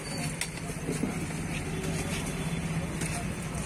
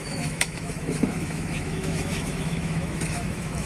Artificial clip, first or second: second